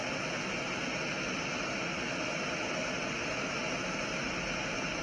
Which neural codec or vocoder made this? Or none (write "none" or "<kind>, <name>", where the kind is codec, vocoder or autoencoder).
none